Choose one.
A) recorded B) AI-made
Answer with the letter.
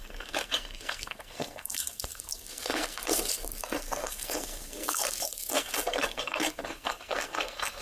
B